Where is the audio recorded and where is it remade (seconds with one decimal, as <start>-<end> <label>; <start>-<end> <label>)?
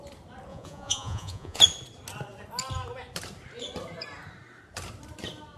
0.0-0.5 recorded; 0.5-1.6 remade; 1.6-5.6 recorded